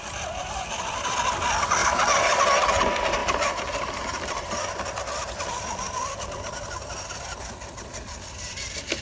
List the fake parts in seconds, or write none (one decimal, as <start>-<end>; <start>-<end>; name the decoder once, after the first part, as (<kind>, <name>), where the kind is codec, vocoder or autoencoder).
1.8-2.4 (vocoder, BigVGAN v2); 3.2-4.8